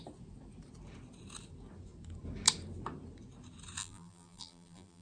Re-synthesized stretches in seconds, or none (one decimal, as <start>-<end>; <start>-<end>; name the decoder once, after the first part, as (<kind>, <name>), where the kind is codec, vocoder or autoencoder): 3.8-5.0 (vocoder, BigVGAN v2)